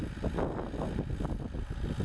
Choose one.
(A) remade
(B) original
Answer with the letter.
B